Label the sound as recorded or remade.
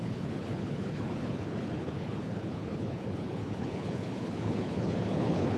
remade